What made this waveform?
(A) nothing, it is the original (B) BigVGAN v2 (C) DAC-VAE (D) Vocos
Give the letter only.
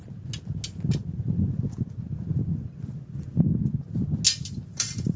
A